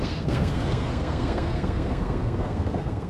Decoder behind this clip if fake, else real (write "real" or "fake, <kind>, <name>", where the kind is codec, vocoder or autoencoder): fake, codec, SNAC